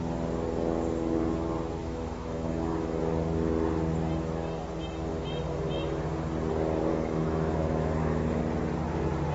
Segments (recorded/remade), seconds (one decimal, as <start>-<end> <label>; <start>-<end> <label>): 0.0-1.8 recorded; 1.8-3.0 remade; 3.0-6.9 recorded; 6.9-8.4 remade; 8.4-9.3 recorded